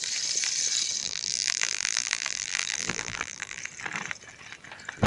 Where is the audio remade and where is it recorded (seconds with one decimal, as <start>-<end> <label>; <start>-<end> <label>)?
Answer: 0.0-1.0 recorded; 1.0-3.6 remade; 3.6-5.1 recorded